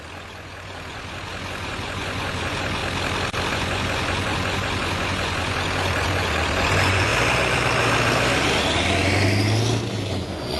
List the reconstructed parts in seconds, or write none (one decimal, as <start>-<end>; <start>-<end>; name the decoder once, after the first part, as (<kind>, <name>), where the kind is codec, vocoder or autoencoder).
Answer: 0.0-2.8 (vocoder, Vocos); 3.5-7.1; 10.1-10.6